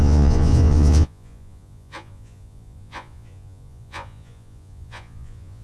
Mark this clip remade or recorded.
remade